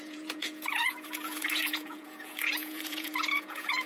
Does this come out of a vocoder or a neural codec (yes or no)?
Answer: yes